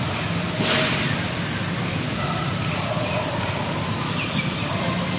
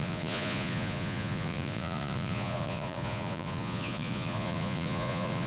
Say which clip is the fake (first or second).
second